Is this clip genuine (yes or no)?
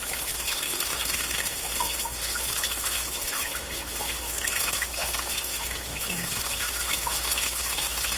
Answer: no